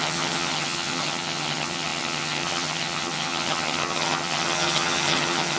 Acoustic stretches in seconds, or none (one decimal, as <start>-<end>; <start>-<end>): none